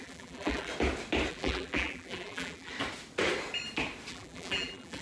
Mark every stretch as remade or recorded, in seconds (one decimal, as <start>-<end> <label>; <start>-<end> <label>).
0.0-0.7 remade; 0.7-1.3 recorded; 1.3-2.7 remade; 2.7-4.1 recorded; 4.1-5.0 remade